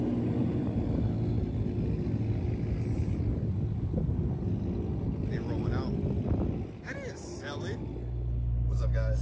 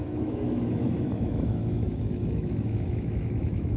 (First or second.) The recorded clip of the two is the first